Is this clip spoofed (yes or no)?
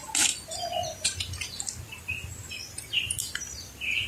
no